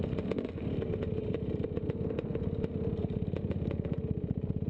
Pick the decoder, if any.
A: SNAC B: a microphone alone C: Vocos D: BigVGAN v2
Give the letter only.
B